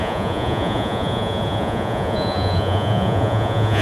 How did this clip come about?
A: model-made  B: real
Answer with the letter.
A